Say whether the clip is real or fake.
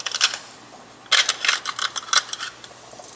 real